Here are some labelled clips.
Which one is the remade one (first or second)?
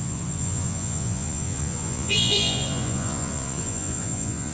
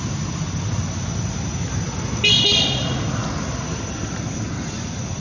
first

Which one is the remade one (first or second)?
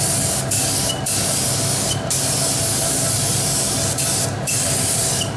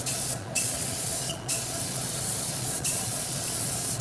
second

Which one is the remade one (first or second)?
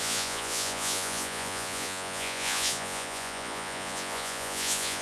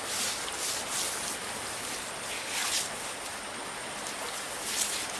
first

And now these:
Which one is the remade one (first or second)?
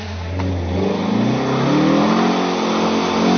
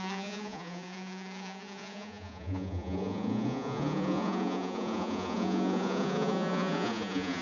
second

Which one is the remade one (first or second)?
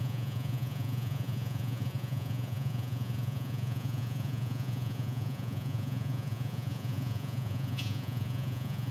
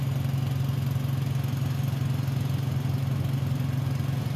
first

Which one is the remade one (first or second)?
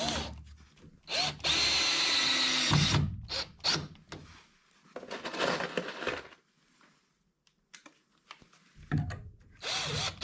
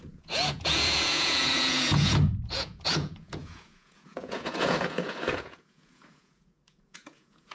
second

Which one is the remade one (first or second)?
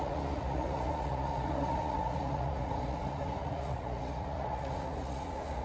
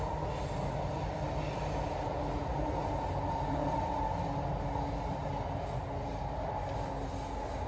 first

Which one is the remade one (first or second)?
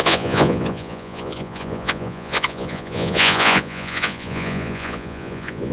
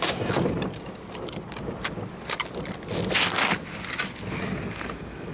first